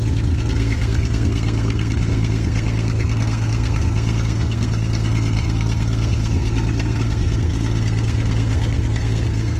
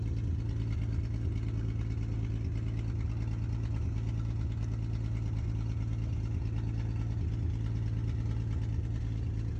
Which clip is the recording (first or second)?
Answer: second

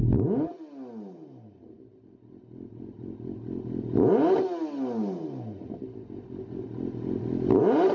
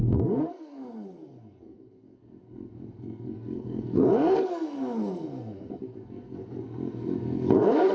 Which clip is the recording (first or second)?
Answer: first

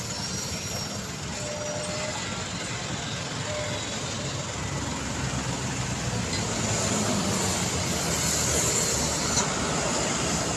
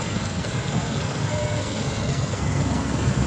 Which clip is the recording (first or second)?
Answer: first